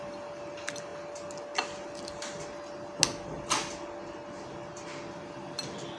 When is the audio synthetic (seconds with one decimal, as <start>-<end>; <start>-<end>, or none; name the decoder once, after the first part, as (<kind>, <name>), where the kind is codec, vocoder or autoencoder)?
none